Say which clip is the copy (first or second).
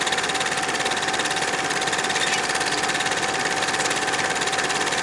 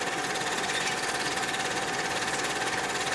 second